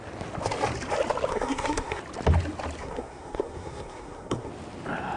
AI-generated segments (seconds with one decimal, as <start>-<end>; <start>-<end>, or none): 1.3-2.0; 2.8-4.5